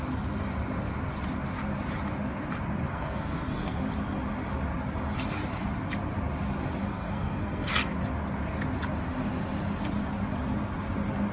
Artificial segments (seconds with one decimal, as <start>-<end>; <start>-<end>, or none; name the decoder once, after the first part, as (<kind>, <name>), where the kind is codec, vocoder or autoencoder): 2.9-3.8 (codec, SNAC); 6.8-7.7